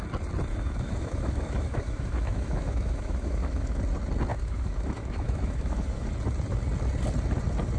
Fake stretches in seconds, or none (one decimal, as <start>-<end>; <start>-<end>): 0.5-3.8; 4.3-6.1